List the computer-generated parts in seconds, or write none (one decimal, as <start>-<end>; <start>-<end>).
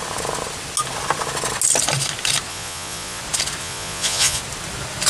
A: 2.5-3.2; 3.6-4.4